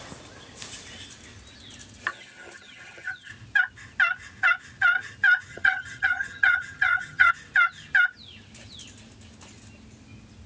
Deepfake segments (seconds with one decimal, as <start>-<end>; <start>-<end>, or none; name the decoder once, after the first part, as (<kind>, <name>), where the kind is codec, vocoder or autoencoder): 2.1-3.3 (vocoder, HiFi-GAN); 5.5-7.3

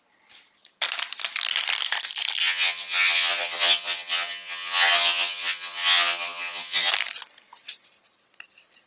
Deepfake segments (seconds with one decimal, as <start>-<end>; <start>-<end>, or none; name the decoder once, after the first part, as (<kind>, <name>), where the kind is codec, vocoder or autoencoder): 2.4-6.9 (vocoder, HiFi-GAN)

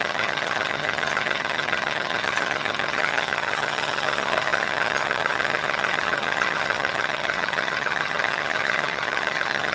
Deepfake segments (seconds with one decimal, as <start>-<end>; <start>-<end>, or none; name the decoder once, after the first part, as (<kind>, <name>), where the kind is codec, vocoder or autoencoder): 0.0-9.7 (vocoder, HiFi-GAN)

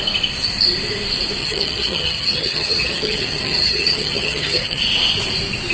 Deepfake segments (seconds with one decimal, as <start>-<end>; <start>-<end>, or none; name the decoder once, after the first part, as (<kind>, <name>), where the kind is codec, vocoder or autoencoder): 1.4-4.8 (vocoder, HiFi-GAN)

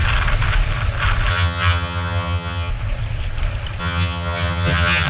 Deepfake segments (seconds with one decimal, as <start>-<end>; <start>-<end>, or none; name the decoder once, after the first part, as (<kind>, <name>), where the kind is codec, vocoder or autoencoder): 1.3-2.7 (vocoder, HiFi-GAN); 3.8-5.1